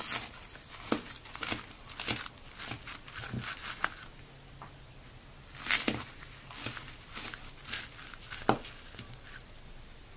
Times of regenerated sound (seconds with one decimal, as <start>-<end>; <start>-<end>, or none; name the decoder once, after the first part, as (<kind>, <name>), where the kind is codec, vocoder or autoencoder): none